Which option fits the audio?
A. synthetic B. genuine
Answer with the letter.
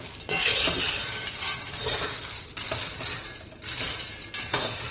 B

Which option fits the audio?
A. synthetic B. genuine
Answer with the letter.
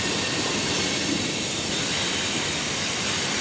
A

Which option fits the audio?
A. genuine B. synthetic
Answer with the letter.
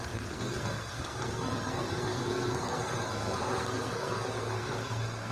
B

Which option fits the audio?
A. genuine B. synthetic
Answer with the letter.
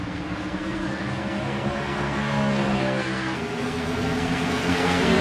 B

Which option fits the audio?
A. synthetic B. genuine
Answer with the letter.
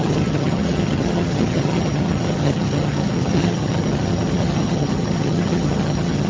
A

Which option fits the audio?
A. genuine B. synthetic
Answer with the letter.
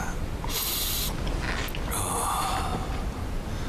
A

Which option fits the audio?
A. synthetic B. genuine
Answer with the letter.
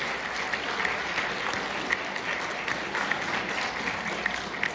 B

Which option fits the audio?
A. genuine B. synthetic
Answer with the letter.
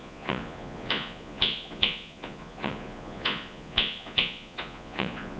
B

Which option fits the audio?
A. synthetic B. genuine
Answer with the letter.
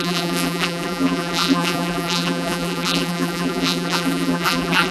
A